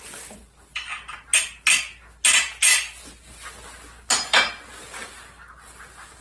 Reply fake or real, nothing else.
real